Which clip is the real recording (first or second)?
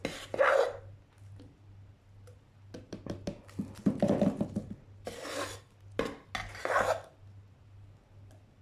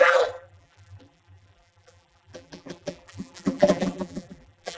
first